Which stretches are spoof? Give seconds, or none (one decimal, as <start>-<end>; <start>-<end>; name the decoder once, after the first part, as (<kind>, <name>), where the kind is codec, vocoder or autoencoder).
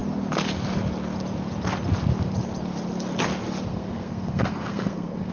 3.7-5.3 (codec, SNAC)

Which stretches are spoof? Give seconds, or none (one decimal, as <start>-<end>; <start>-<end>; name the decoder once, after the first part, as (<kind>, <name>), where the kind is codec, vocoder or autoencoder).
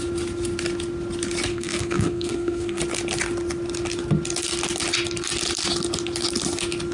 1.5-2.8 (codec, SNAC)